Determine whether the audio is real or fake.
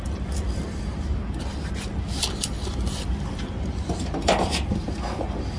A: real